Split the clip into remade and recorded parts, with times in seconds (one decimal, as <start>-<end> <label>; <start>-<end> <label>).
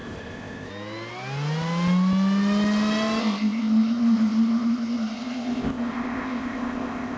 0.0-0.7 remade; 0.7-3.2 recorded; 3.2-7.2 remade